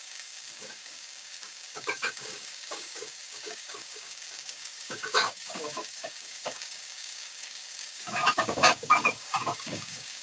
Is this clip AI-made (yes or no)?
yes